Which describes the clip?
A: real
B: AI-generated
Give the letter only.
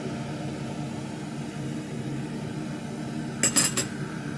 A